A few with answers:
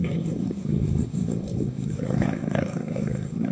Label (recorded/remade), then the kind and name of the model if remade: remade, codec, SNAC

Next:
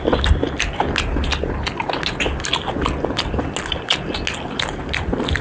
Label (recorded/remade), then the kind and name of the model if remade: recorded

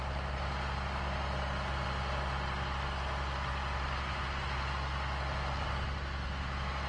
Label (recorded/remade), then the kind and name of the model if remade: recorded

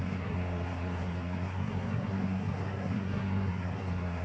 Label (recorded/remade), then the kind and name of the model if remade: remade, codec, SNAC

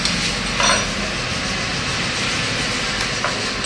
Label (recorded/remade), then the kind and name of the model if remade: recorded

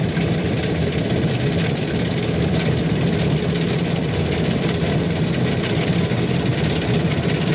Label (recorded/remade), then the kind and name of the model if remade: recorded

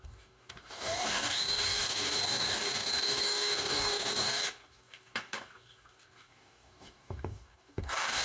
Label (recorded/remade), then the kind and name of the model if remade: remade, codec, DAC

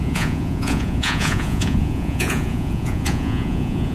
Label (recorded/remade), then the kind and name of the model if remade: remade, vocoder, Vocos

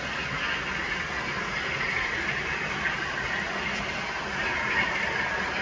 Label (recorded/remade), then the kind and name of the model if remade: recorded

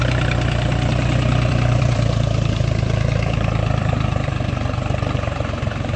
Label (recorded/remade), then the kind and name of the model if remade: remade, vocoder, BigVGAN v2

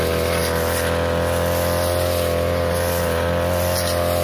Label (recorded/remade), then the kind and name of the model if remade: recorded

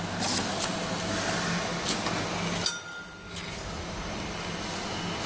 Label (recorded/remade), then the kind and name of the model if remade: recorded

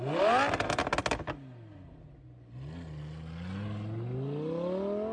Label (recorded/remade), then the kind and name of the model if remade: recorded